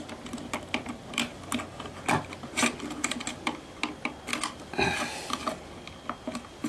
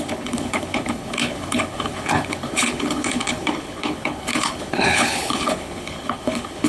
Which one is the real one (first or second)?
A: first